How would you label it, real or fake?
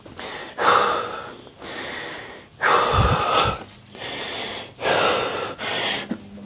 real